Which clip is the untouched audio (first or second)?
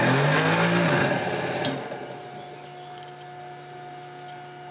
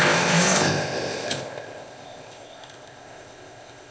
first